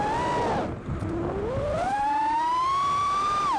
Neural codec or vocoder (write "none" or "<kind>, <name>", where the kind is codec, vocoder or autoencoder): none